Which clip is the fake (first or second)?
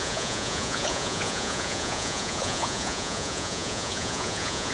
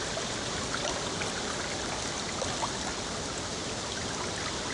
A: first